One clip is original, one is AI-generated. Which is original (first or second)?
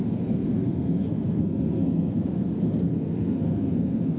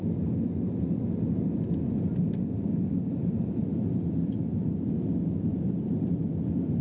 second